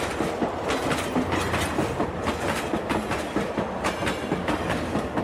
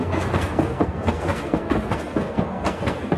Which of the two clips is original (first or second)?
first